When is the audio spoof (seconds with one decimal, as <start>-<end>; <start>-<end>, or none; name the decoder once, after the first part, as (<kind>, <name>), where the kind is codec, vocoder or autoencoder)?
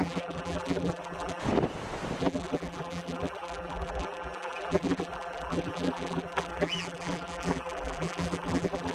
0.0-1.4 (vocoder, BigVGAN v2); 2.2-8.9